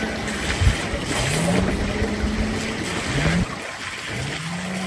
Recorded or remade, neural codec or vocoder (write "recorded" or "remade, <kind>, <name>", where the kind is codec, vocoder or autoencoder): recorded